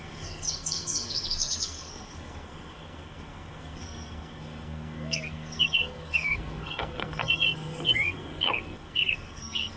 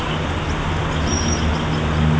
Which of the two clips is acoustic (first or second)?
second